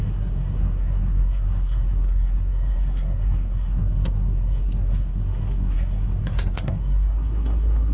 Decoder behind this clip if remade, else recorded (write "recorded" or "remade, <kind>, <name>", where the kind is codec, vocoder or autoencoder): remade, codec, SNAC